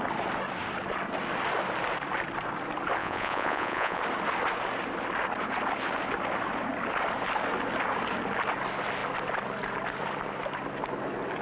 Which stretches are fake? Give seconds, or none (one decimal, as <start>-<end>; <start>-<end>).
3.0-4.0